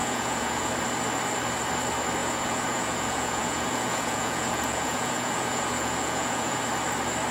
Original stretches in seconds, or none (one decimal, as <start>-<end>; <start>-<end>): 0.7-2.2; 6.6-7.3